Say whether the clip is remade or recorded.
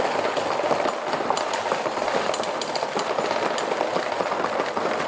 recorded